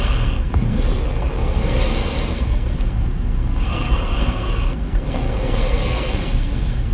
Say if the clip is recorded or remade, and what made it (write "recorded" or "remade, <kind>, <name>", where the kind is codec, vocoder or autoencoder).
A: remade, codec, SNAC